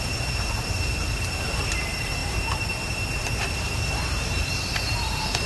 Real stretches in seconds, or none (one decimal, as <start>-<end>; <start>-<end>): none